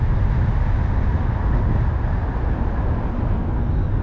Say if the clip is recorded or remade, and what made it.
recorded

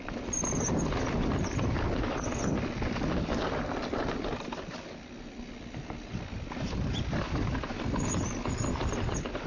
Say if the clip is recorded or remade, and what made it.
recorded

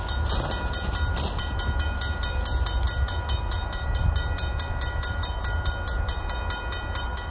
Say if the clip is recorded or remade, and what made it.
recorded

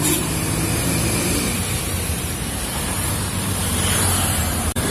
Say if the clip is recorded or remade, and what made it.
remade, vocoder, BigVGAN v2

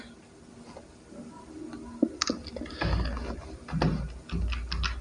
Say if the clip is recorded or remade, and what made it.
recorded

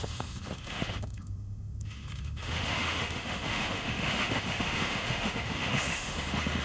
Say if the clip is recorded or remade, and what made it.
remade, autoencoder, DAC-VAE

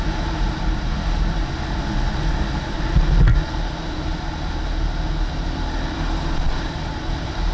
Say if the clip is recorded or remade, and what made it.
recorded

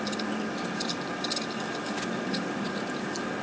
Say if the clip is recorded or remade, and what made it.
recorded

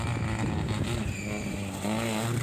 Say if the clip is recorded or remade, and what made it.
recorded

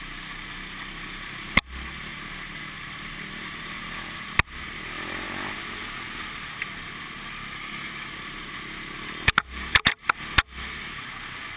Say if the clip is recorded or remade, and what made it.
recorded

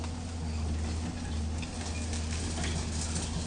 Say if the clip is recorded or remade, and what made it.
recorded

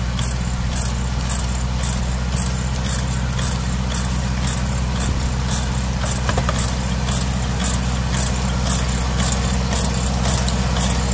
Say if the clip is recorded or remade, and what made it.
remade, vocoder, BigVGAN v2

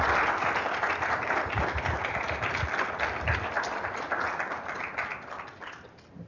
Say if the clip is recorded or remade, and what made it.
recorded